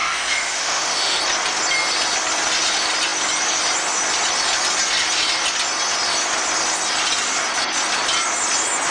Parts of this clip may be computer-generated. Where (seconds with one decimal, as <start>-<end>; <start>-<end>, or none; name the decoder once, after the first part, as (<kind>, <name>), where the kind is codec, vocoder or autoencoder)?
0.0-1.2 (autoencoder, DAC-VAE)